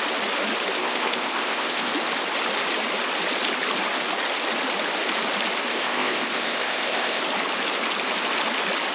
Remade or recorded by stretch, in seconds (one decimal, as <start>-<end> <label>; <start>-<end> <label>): 0.0-0.8 recorded; 0.8-1.9 remade; 1.9-5.7 recorded; 5.7-7.2 remade; 7.2-8.9 recorded